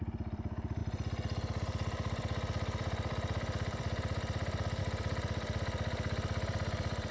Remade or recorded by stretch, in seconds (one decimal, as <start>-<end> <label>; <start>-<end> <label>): 0.0-7.1 remade